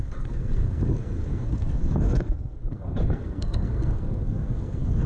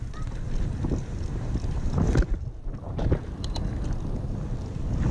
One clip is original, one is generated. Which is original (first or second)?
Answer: second